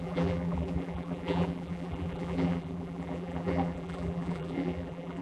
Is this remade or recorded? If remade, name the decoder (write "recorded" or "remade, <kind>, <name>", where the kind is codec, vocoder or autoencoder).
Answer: remade, vocoder, BigVGAN v2